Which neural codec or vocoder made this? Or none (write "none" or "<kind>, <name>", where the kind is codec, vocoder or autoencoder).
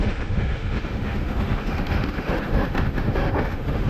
autoencoder, DAC-VAE